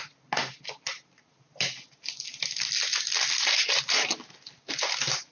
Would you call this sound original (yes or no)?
yes